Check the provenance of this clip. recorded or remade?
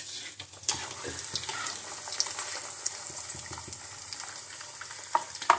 recorded